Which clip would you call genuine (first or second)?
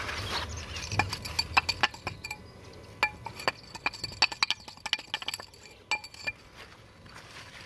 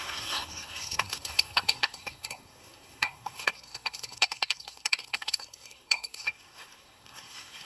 first